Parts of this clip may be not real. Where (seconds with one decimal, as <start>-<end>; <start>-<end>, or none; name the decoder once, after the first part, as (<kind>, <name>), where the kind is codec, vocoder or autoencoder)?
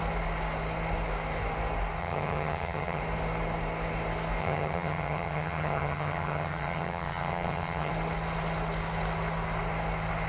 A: 2.0-3.0 (vocoder, HiFi-GAN); 4.4-7.9